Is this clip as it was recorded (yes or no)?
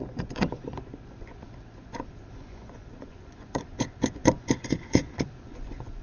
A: no